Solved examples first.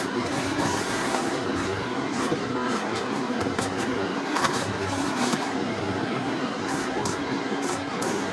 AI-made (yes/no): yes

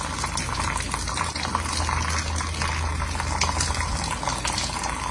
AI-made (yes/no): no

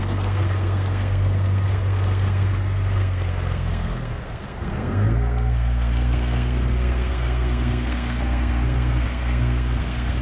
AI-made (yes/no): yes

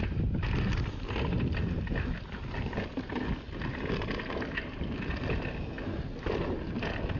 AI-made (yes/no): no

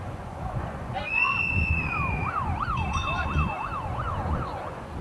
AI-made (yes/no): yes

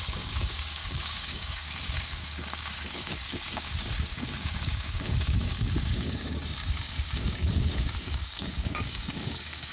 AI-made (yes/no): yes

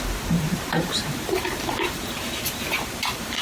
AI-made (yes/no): yes